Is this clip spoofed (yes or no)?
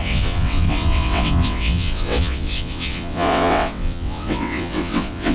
yes